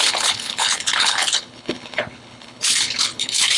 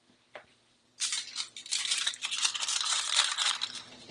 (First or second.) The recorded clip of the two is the second